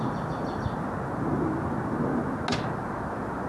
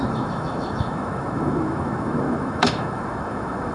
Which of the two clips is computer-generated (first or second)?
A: second